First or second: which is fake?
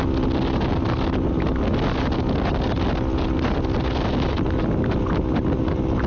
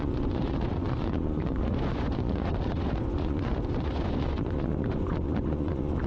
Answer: second